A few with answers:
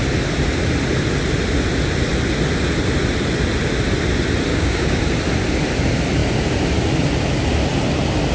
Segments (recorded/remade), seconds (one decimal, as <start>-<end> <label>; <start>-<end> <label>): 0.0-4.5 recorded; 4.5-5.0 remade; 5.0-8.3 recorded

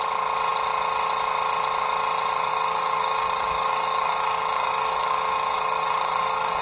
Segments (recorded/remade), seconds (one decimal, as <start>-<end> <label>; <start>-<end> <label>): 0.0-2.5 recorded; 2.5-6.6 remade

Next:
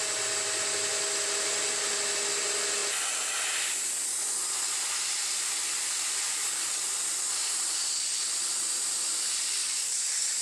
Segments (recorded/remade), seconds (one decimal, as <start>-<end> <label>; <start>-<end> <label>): 0.0-6.3 recorded; 6.3-6.8 remade; 6.8-9.6 recorded; 9.6-10.4 remade

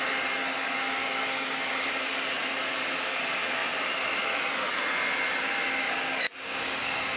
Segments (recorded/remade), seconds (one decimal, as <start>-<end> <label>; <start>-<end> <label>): 0.0-0.6 recorded; 0.6-1.9 remade; 1.9-5.8 recorded; 5.8-6.8 remade; 6.8-7.2 recorded

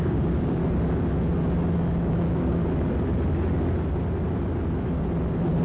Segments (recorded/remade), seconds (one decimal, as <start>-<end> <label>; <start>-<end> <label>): 0.0-0.6 remade; 0.6-1.7 recorded; 1.7-2.6 remade; 2.6-5.6 recorded